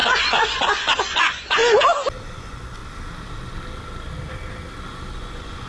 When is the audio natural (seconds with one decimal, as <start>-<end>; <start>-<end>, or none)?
1.6-2.4; 2.8-5.1

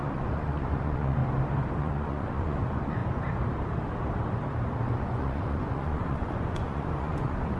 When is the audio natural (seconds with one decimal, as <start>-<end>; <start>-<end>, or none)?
1.2-1.8; 3.0-4.9